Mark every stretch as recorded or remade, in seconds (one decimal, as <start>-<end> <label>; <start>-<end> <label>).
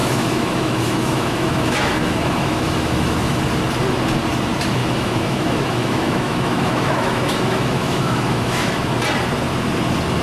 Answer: 0.0-3.4 remade; 3.4-4.8 recorded; 4.8-8.9 remade; 8.9-10.2 recorded